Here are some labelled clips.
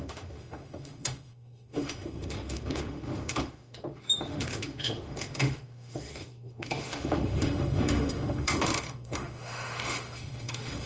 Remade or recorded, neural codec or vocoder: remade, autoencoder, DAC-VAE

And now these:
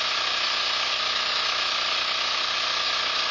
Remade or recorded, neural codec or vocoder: remade, autoencoder, DAC-VAE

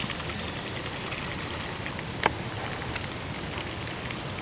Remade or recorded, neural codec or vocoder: recorded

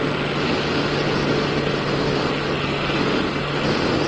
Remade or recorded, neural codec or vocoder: recorded